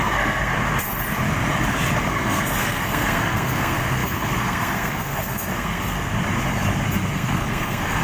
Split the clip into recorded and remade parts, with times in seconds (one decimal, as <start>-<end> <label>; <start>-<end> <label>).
0.0-0.5 remade; 0.5-2.1 recorded; 2.1-6.1 remade; 6.1-7.1 recorded; 7.1-8.0 remade